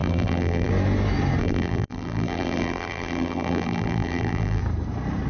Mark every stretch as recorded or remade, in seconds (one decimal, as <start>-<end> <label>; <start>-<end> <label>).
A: 0.0-0.7 remade; 0.7-1.4 recorded; 1.4-4.6 remade; 4.6-5.3 recorded